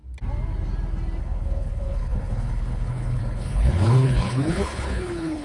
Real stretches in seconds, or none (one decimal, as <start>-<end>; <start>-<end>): 0.0-1.2